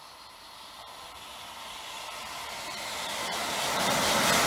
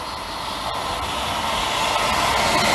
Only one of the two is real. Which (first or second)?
second